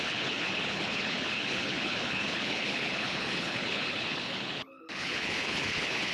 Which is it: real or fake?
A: fake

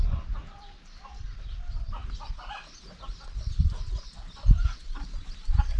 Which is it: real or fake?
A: real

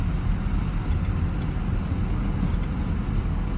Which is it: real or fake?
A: real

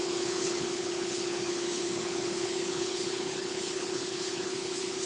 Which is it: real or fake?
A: fake